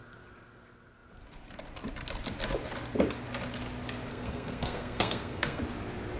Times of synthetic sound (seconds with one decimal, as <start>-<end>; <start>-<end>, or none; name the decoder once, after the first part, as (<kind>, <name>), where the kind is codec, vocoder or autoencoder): 4.1-5.6 (codec, SNAC)